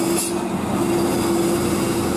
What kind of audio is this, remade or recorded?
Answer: recorded